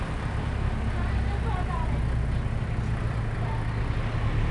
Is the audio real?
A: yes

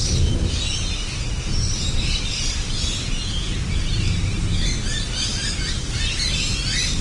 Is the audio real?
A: yes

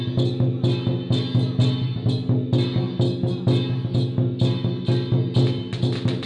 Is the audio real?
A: yes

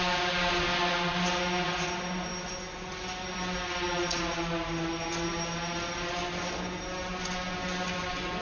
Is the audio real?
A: yes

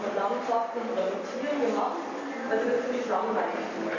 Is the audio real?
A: yes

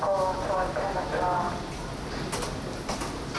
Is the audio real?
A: yes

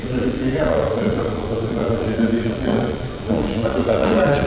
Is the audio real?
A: no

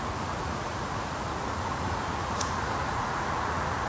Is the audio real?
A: no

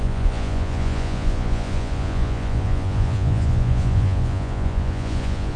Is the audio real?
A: no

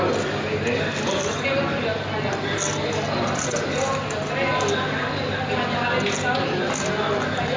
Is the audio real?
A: yes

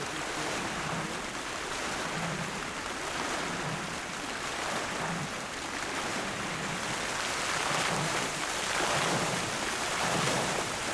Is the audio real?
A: yes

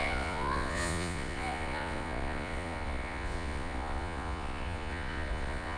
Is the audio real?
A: no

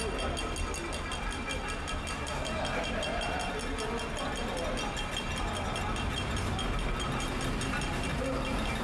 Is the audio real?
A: yes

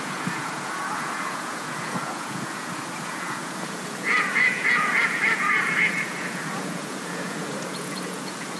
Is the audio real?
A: no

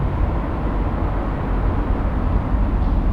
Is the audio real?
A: yes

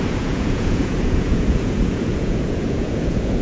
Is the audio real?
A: no